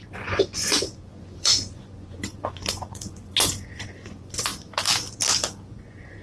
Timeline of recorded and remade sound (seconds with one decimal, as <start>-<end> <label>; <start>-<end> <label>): 0.0-4.5 remade; 4.5-5.7 recorded; 5.7-6.2 remade